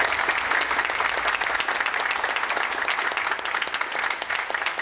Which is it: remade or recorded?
recorded